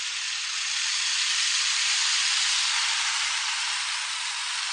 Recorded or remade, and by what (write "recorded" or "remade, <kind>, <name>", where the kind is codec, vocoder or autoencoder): remade, vocoder, BigVGAN v2